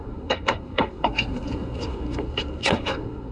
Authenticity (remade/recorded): remade